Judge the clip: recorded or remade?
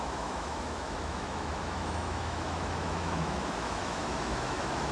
remade